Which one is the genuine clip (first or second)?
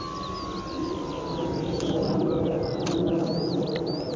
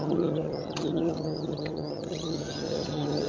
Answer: first